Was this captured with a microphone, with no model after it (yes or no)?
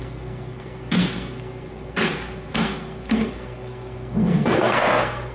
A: no